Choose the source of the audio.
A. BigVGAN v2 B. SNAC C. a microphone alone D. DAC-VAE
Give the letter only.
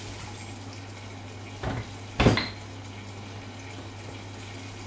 C